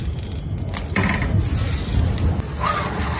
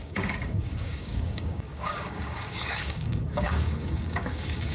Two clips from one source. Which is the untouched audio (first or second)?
first